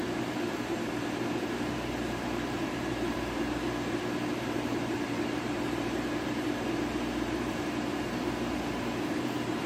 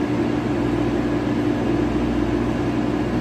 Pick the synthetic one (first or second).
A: first